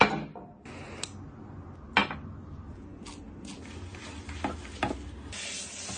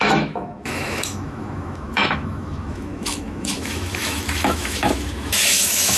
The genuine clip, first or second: first